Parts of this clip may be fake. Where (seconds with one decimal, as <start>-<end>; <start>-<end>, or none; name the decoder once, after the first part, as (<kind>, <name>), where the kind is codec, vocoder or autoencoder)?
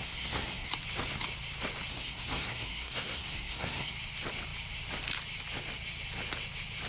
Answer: 0.0-0.7 (codec, SNAC); 1.9-3.9